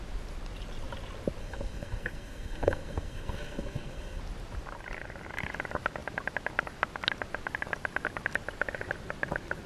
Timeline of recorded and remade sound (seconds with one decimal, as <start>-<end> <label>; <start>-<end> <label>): 0.0-1.4 recorded; 1.4-4.2 remade; 4.2-9.7 recorded